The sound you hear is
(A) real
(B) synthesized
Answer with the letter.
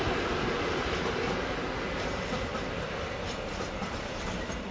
A